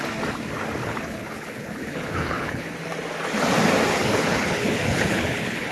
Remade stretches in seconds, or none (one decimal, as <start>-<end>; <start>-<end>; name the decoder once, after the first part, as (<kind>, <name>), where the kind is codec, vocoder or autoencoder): 0.8-2.7 (codec, HILCodec); 3.9-5.7